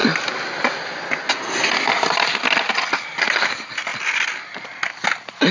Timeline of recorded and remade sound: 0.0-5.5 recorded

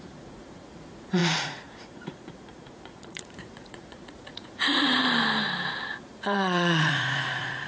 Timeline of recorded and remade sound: 0.0-5.0 remade; 5.0-5.9 recorded; 5.9-7.7 remade

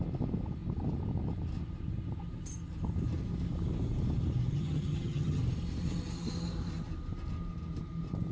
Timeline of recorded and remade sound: 0.0-4.5 recorded; 4.5-5.4 remade; 5.4-8.3 recorded

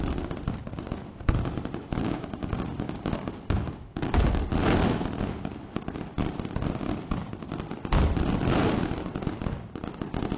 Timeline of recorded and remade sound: 0.0-2.0 recorded; 2.0-4.4 remade; 4.4-10.4 recorded